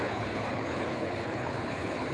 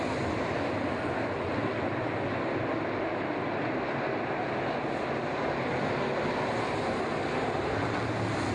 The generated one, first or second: first